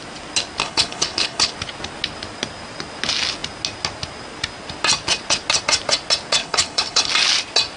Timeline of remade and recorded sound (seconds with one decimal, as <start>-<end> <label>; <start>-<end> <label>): 0.0-0.6 recorded; 0.6-1.5 remade; 1.5-6.4 recorded; 6.4-7.1 remade; 7.1-7.8 recorded